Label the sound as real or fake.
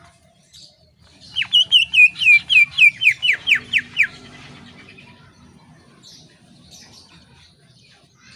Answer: fake